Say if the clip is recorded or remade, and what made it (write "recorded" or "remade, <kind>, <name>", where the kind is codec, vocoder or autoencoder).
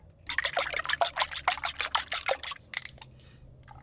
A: recorded